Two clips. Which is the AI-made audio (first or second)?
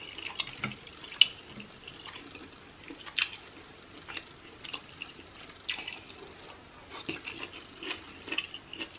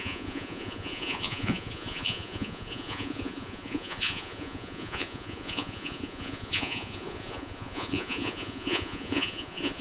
second